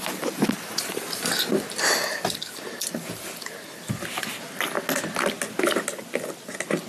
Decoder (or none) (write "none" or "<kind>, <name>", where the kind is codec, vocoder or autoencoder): none